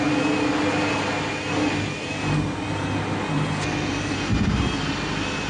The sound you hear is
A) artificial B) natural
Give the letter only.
B